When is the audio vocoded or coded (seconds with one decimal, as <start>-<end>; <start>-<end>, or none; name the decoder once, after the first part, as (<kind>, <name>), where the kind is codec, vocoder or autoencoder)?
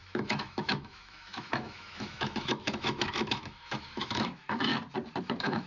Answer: 0.0-4.7 (autoencoder, DAC-VAE); 5.2-5.7